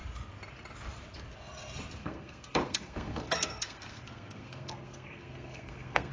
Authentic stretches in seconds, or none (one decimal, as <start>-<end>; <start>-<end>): 0.0-2.0